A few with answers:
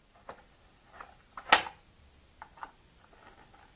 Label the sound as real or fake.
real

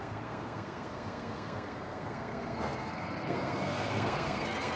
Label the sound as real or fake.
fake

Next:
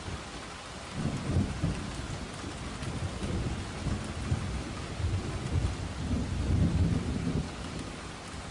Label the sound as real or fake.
real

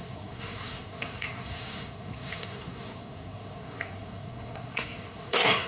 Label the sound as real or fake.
fake